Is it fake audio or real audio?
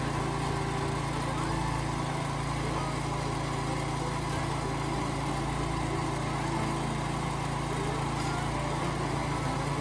real